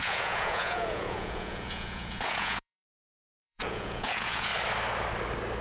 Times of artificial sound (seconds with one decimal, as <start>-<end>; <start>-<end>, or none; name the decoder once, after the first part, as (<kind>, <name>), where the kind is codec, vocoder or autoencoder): 0.0-4.5 (vocoder, Vocos)